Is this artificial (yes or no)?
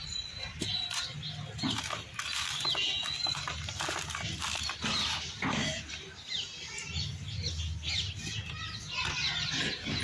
no